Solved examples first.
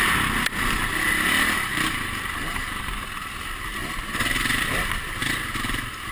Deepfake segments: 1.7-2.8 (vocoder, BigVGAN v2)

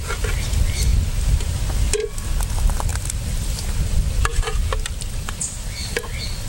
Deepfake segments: none

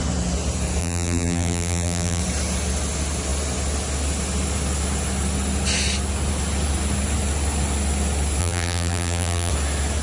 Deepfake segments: 0.8-2.2 (vocoder, BigVGAN v2); 8.4-9.5

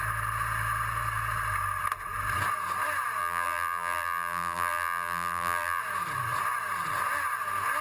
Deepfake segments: 3.2-5.8 (vocoder, BigVGAN v2)